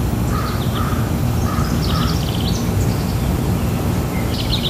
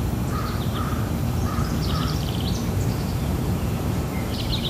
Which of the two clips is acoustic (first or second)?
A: first